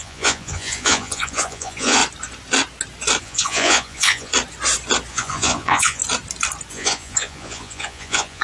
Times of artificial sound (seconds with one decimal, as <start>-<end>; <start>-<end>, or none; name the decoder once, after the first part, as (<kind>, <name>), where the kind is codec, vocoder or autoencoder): 0.0-2.0 (vocoder, Vocos); 3.2-4.3; 5.1-6.0; 6.7-8.4